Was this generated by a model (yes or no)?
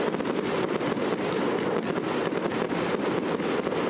no